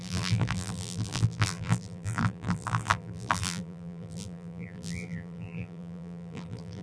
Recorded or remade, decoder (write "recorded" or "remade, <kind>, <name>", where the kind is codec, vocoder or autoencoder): remade, vocoder, BigVGAN v2